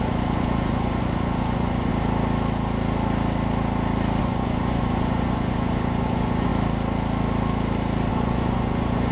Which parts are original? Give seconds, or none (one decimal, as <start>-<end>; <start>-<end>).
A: 1.9-4.2; 6.5-8.1